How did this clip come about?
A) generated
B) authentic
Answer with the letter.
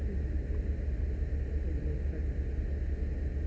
B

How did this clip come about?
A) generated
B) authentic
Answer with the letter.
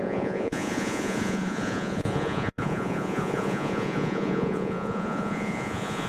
A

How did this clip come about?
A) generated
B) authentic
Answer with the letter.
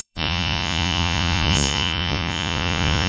A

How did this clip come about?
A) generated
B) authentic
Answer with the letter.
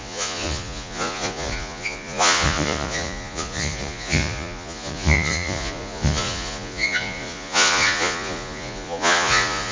A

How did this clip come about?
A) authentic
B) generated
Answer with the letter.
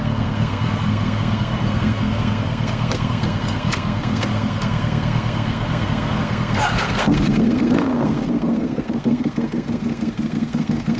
B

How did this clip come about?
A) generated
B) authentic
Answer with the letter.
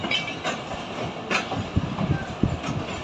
B